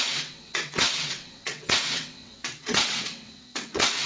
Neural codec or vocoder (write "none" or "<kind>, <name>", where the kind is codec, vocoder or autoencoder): vocoder, WaveNeXt